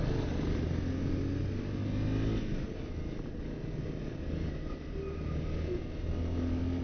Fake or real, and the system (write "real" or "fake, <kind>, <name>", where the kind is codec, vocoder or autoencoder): real